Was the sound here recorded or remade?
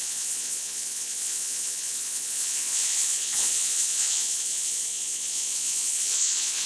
remade